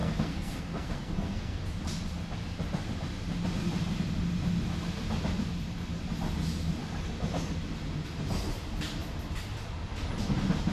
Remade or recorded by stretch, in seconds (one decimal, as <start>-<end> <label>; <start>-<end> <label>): 0.0-1.6 remade; 1.6-10.7 recorded